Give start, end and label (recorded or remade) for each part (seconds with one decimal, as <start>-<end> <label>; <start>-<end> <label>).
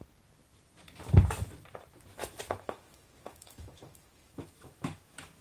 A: 0.0-2.1 recorded; 2.1-5.4 remade